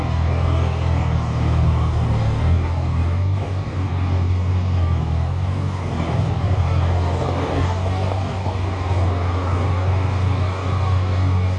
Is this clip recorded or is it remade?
remade